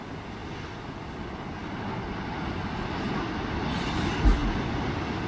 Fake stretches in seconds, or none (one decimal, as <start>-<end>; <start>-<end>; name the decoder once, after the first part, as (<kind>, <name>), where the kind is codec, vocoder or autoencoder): none